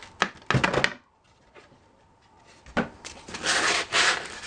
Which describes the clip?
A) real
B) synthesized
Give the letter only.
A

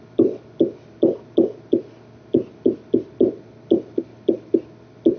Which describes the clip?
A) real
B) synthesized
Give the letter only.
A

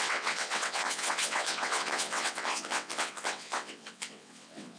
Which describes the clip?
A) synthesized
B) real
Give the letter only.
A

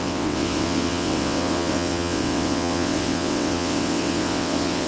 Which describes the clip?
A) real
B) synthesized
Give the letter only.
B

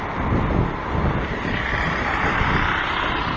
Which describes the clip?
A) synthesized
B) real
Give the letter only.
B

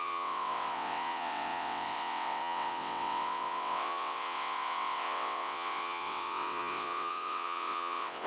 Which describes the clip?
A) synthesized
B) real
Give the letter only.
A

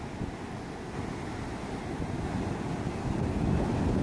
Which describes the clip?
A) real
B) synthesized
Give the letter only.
A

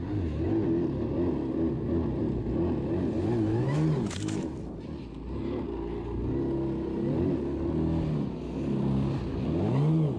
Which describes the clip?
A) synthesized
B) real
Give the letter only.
B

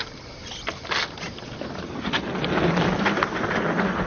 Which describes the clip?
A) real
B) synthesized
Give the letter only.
A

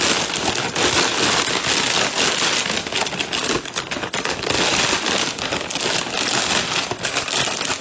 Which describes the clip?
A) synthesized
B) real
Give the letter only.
B